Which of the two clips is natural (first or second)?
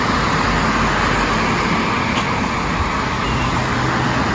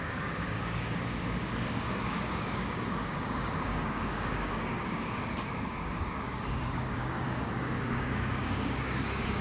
first